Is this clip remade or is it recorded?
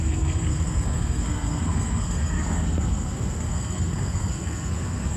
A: remade